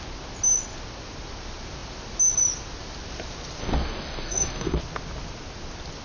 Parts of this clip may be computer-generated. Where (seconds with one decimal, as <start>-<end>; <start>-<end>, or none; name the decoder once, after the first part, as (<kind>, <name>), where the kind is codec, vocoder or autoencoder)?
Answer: 3.6-4.8 (codec, DAC)